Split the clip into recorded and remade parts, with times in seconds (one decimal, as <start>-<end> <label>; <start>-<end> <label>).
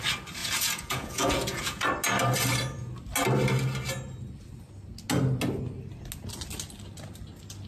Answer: 0.0-0.4 recorded; 0.4-1.8 remade; 1.8-7.7 recorded